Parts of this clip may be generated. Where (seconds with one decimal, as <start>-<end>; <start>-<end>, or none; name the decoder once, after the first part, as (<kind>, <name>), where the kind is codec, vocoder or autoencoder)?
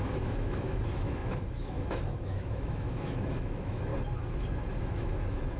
0.0-3.9 (autoencoder, DAC-VAE); 4.8-5.6